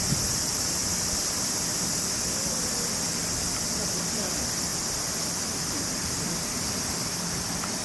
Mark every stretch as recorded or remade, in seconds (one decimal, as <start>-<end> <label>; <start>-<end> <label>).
0.0-0.8 recorded; 0.8-1.3 remade; 1.3-7.8 recorded